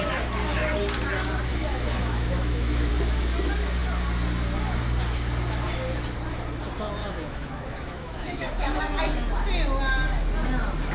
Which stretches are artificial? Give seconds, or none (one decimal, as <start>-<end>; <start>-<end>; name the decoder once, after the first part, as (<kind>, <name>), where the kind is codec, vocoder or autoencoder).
1.5-2.9 (autoencoder, DAC-VAE); 7.0-8.8